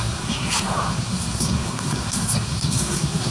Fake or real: fake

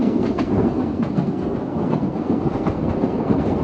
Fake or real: fake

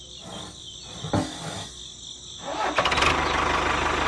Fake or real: real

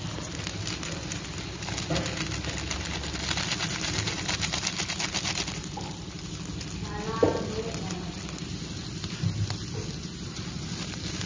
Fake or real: real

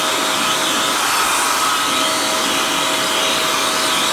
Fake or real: real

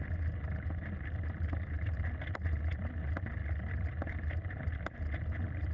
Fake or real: real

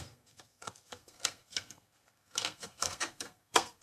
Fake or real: fake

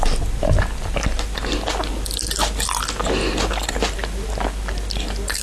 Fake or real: real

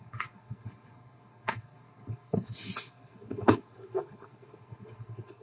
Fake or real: fake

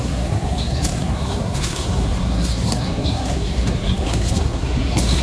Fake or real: fake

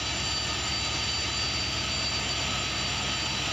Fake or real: real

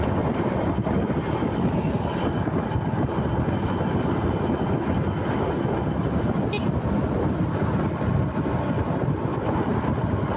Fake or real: real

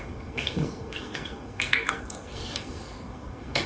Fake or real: fake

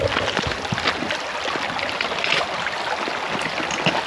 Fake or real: real